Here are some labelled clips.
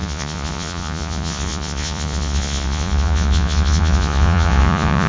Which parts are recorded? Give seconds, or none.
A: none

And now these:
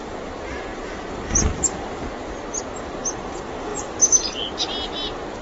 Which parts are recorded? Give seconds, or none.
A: 0.0-5.4

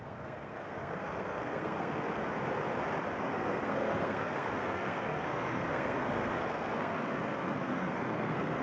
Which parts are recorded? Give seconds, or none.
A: 2.2-3.2

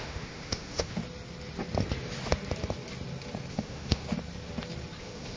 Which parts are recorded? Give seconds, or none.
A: 1.0-3.5; 4.0-5.0

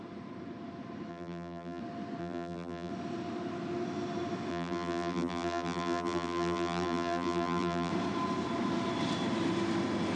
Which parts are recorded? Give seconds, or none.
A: 0.0-1.1; 1.8-2.2; 2.9-4.5; 7.9-10.2